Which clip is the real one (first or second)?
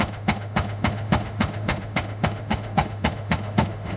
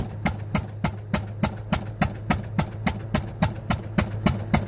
second